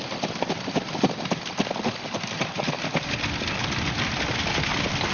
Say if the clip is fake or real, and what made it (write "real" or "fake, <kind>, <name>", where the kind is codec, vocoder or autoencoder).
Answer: real